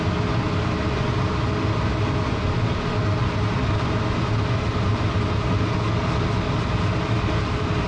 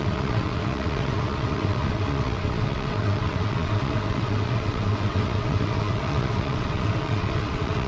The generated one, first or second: second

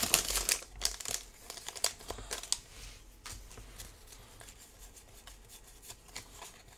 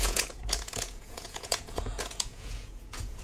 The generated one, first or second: second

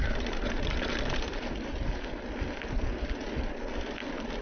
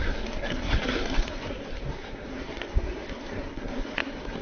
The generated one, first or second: second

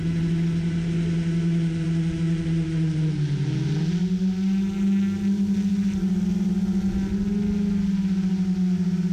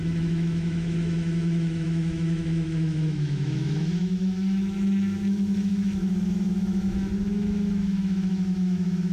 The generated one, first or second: second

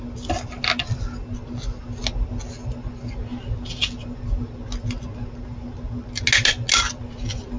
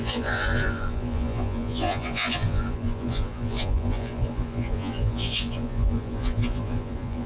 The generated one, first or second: second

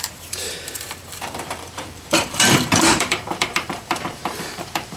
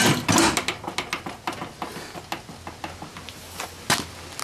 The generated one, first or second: first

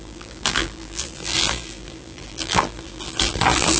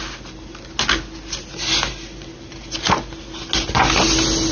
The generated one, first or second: first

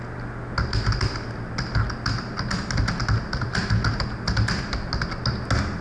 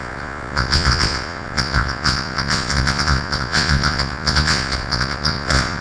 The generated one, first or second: second